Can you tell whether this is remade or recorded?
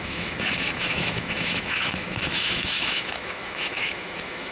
remade